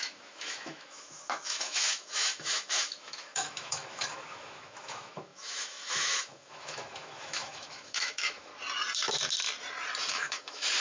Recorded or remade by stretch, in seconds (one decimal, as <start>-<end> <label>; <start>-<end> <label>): 0.0-8.5 remade; 8.5-10.1 recorded; 10.1-10.8 remade